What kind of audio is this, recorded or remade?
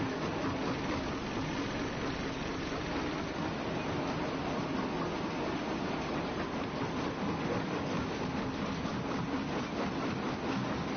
recorded